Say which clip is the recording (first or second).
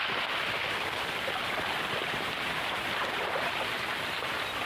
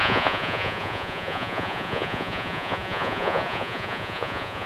first